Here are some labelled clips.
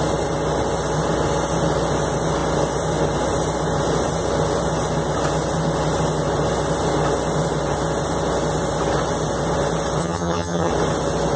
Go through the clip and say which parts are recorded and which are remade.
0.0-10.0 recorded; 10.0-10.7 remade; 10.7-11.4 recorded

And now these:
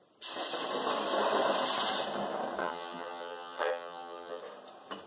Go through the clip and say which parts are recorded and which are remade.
0.0-2.6 recorded; 2.6-4.4 remade; 4.4-5.1 recorded

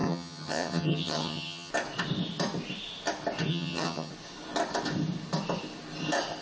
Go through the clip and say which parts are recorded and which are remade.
0.0-1.7 remade; 1.7-3.5 recorded; 3.5-4.1 remade; 4.1-6.4 recorded

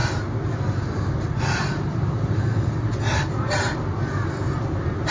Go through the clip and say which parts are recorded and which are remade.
0.0-5.1 recorded

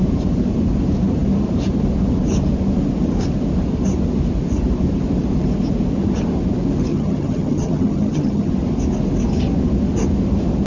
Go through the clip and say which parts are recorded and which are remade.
0.0-6.9 recorded; 6.9-8.5 remade; 8.5-10.7 recorded

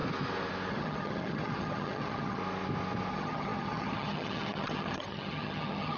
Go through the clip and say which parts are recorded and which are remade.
0.0-0.7 recorded; 0.7-2.4 remade; 2.4-3.1 recorded; 3.1-6.0 remade

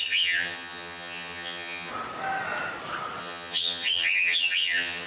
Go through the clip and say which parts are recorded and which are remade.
0.0-1.9 remade; 1.9-3.2 recorded; 3.2-5.1 remade